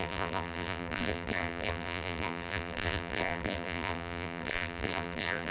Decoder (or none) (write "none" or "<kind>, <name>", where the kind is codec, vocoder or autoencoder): vocoder, BigVGAN v2